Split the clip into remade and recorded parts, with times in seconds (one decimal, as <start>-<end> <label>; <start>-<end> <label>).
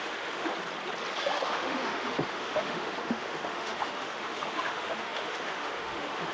0.0-0.5 remade; 0.5-1.2 recorded; 1.2-6.3 remade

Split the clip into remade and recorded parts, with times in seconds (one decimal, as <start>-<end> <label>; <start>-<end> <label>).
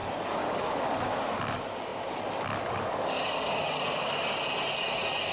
0.0-5.3 recorded